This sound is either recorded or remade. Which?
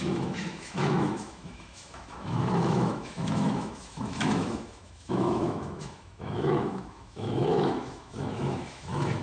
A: remade